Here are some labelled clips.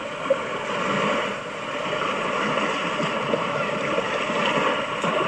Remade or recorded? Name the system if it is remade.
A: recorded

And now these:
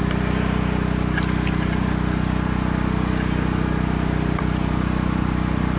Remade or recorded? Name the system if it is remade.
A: recorded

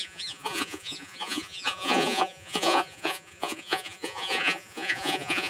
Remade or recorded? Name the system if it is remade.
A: remade, vocoder, Vocos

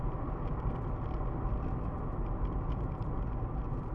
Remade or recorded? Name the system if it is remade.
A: recorded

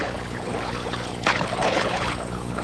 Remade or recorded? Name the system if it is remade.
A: remade, codec, HILCodec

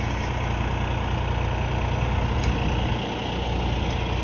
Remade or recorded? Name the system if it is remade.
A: recorded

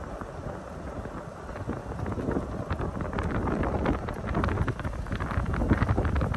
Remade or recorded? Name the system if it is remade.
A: recorded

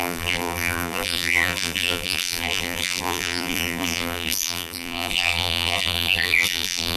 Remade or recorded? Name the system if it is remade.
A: remade, vocoder, BigVGAN v2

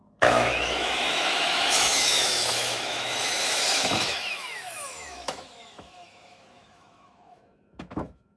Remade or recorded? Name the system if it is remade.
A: remade, autoencoder, DAC-VAE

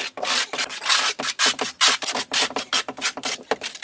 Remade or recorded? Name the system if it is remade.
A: remade, vocoder, BigVGAN v2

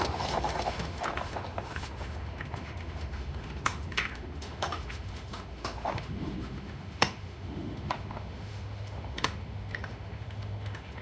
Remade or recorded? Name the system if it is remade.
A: remade, autoencoder, DAC-VAE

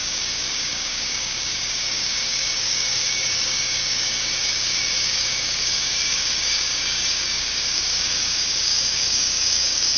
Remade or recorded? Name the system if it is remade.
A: remade, codec, DAC